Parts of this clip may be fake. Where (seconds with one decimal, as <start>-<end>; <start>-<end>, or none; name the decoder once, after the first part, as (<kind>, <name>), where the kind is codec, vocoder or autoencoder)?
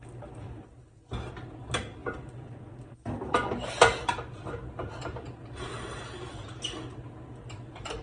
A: none